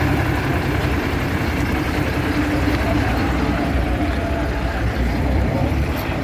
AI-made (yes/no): yes